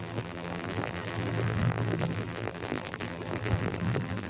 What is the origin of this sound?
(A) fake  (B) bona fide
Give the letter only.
A